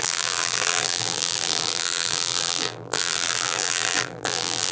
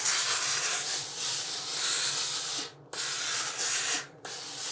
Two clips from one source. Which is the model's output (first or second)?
first